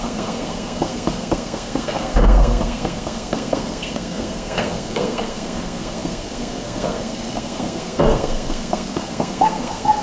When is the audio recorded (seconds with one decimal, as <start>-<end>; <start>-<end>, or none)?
none